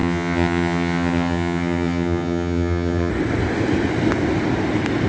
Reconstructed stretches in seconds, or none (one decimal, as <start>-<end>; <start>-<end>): 0.0-3.1